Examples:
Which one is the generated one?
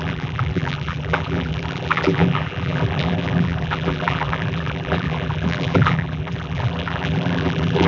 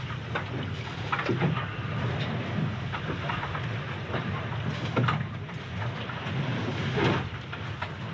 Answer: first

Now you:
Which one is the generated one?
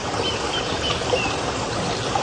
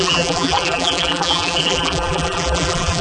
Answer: second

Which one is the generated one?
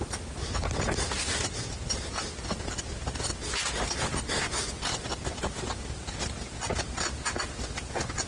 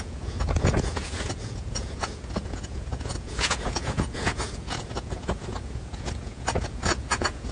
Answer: second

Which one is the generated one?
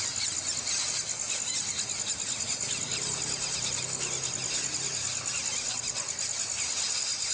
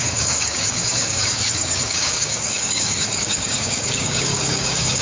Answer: second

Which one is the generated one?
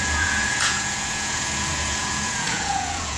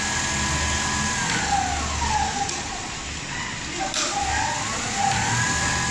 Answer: first